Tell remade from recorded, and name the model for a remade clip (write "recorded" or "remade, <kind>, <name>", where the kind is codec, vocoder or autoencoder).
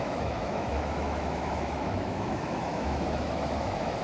remade, autoencoder, DAC-VAE